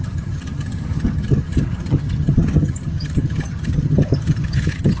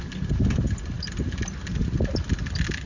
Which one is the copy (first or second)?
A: first